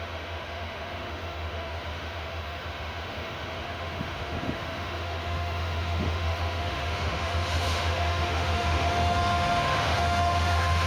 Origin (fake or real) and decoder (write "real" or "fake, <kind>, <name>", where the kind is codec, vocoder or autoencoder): fake, autoencoder, DAC-VAE